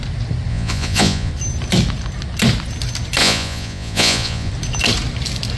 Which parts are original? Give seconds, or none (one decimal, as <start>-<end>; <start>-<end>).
0.0-0.5; 1.3-3.2; 4.5-5.6